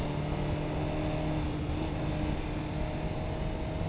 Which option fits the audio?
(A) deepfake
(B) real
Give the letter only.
B